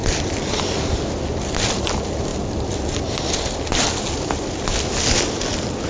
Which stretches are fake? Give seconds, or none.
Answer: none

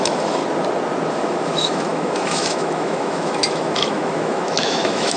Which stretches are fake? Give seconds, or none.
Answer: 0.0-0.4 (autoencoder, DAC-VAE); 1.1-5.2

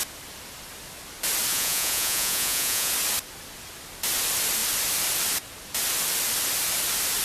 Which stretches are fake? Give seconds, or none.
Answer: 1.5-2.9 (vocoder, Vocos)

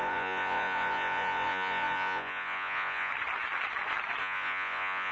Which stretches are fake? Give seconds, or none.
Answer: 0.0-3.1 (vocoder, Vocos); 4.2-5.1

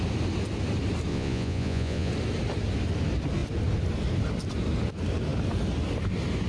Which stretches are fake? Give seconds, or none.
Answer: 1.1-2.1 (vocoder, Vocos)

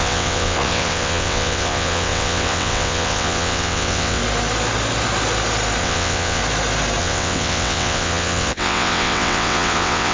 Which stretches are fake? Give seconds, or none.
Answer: 0.0-4.2 (vocoder, WaveNeXt); 5.8-6.4; 7.0-10.1

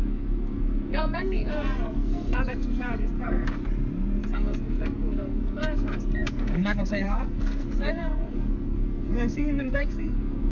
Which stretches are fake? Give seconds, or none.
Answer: 0.0-3.6 (codec, SNAC); 4.2-10.5